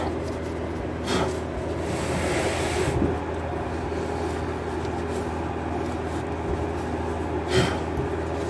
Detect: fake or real real